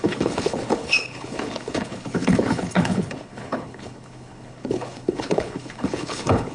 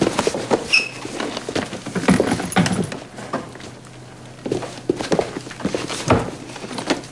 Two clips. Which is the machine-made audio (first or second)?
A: first